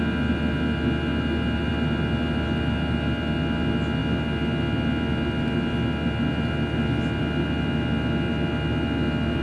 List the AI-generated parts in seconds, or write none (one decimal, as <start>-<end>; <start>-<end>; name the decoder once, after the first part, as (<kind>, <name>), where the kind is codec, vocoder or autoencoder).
none